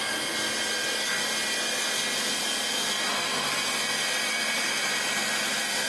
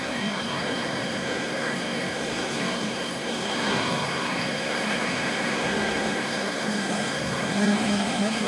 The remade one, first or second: second